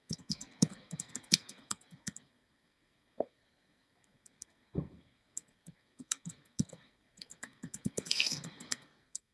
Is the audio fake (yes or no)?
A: yes